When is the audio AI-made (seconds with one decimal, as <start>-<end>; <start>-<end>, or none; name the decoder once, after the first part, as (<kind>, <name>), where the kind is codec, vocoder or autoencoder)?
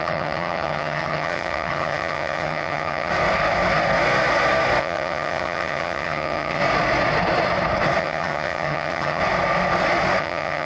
0.0-3.1 (vocoder, HiFi-GAN); 4.8-6.6; 8.0-9.2; 10.2-10.6